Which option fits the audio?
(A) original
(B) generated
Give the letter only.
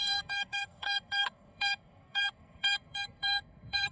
B